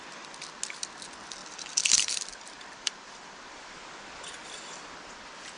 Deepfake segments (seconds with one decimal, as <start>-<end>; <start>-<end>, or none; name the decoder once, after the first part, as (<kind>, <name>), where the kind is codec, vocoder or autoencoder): 1.4-4.8 (vocoder, BigVGAN v2)